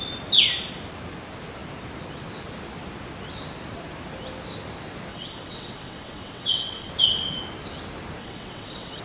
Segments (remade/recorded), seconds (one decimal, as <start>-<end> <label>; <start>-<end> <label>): 0.0-5.1 recorded; 5.1-6.9 remade; 6.9-8.2 recorded; 8.2-9.0 remade